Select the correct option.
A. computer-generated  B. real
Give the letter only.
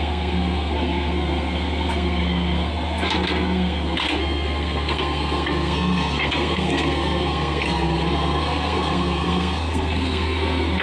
A